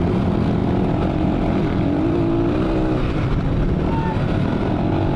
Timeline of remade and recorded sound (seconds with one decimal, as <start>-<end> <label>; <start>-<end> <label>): 0.0-5.2 recorded